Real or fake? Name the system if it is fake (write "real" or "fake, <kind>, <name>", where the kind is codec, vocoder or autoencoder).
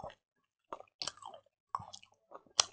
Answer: real